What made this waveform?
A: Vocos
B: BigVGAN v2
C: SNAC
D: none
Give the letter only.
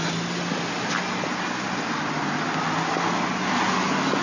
D